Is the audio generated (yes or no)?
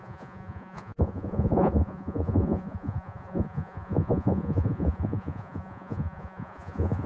yes